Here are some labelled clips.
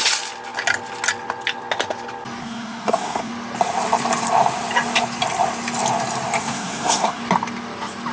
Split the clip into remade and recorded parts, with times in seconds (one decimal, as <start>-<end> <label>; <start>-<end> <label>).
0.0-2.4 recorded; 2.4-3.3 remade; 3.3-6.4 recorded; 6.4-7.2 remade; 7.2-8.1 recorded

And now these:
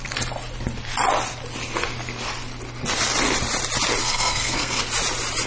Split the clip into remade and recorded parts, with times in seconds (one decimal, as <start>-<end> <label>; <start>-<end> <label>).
0.0-4.0 recorded; 4.0-4.8 remade; 4.8-5.5 recorded

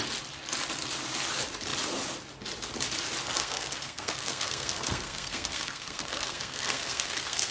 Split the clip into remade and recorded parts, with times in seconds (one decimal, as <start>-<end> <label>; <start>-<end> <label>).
0.0-3.4 recorded; 3.4-7.5 remade

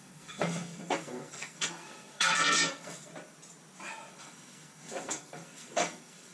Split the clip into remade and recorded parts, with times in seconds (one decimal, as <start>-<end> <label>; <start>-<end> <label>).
0.0-3.1 remade; 3.1-4.1 recorded; 4.1-6.3 remade

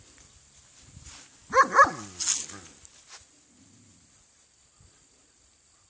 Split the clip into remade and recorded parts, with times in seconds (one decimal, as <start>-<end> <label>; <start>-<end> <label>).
0.0-5.9 recorded